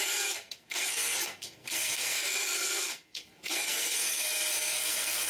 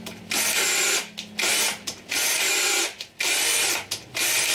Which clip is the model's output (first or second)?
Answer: first